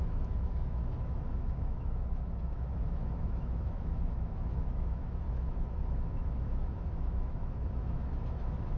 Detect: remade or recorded remade